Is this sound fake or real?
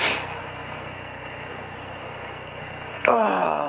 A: fake